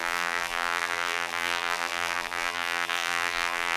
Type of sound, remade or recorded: remade